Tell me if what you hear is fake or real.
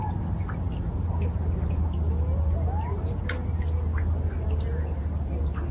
real